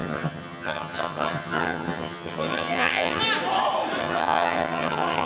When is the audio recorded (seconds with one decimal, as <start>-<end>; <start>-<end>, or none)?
3.2-4.0